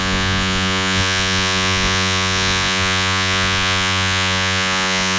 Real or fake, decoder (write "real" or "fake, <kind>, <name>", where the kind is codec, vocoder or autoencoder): fake, vocoder, Vocos